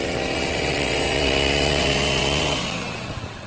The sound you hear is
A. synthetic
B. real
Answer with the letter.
A